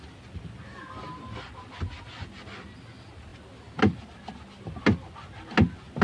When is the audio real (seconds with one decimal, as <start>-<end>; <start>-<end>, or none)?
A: 0.0-6.0